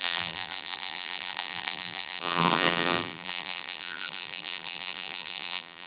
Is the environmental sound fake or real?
fake